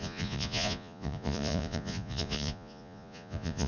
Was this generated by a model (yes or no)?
yes